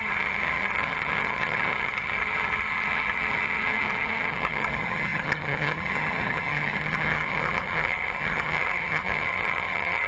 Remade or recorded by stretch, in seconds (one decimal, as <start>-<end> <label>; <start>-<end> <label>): 0.0-10.1 remade